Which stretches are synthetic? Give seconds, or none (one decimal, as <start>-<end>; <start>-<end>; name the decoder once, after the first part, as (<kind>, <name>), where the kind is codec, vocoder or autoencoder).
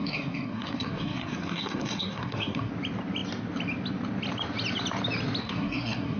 0.0-2.7 (codec, SNAC); 5.4-6.2